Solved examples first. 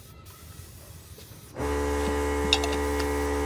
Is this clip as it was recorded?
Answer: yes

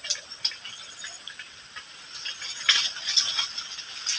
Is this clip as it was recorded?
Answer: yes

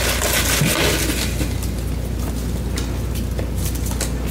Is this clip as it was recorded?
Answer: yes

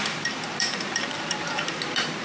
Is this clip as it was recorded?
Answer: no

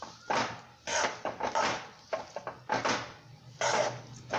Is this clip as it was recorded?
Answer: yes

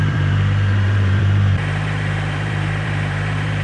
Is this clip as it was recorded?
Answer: no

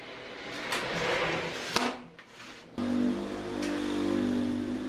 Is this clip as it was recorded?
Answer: yes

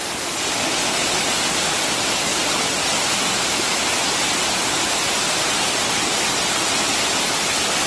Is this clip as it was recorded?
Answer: yes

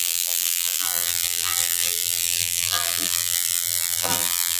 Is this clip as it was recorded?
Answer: no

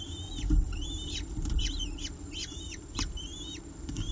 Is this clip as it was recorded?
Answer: no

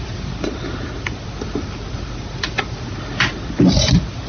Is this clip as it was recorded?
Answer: yes